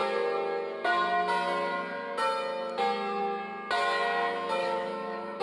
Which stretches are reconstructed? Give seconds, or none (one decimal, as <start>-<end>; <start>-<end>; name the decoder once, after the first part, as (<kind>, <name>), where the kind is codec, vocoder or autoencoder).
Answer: 4.6-5.4 (codec, DAC)